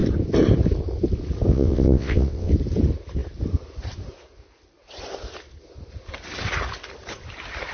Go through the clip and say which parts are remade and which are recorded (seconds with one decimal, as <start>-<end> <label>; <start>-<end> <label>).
0.0-1.5 recorded; 1.5-2.5 remade; 2.5-7.7 recorded